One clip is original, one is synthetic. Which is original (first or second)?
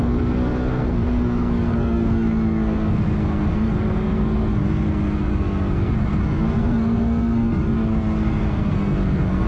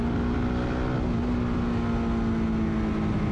second